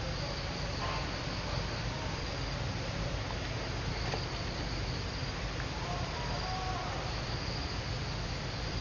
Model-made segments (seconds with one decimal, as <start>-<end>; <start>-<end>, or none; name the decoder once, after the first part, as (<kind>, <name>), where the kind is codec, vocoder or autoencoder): none

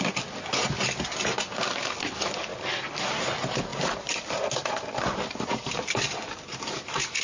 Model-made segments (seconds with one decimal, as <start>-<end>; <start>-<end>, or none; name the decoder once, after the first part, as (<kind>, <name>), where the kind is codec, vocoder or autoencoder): 2.5-3.2 (vocoder, BigVGAN v2); 3.7-7.2

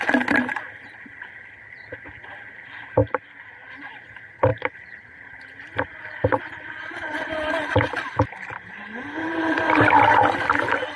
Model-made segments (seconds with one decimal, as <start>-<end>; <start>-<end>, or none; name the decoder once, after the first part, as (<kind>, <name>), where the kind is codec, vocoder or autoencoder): none

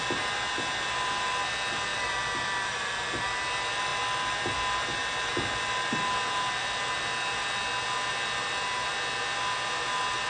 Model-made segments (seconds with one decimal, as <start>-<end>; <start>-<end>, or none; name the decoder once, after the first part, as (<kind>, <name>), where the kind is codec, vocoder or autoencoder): 1.9-3.2 (vocoder, BigVGAN v2)